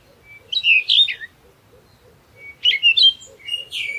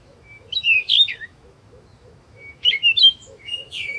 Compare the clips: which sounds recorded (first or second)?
first